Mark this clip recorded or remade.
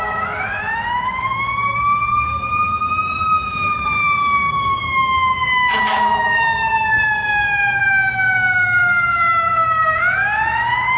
remade